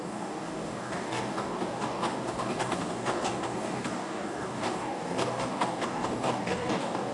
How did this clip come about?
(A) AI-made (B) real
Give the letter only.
A